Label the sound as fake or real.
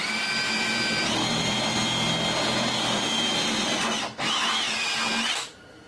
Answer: real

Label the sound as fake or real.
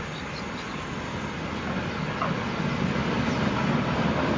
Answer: real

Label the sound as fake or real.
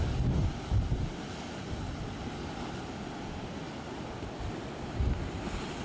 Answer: real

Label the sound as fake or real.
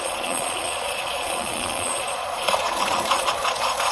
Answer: fake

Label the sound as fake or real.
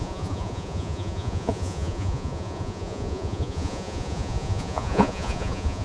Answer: fake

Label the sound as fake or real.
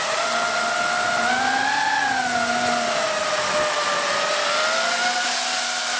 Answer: real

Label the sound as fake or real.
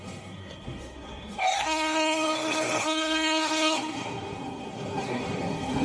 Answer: fake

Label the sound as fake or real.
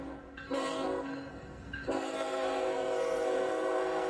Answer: fake